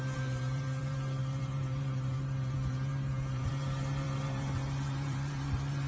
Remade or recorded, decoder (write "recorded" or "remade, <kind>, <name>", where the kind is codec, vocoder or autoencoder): remade, vocoder, BigVGAN v2